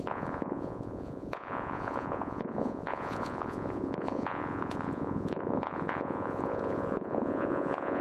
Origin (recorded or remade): remade